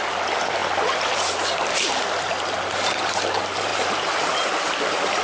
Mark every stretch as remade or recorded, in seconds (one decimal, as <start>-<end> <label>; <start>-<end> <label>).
0.0-5.2 recorded